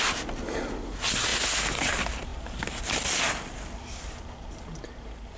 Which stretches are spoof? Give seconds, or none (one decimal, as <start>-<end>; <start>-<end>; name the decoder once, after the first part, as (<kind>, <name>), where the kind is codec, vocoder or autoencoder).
none